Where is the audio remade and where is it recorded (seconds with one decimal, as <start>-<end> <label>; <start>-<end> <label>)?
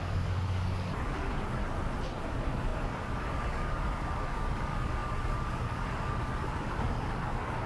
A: 0.0-1.6 remade; 1.6-2.2 recorded; 2.2-7.7 remade